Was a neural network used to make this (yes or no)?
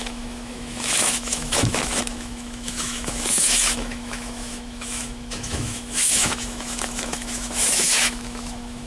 yes